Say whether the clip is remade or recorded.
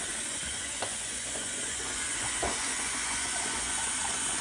remade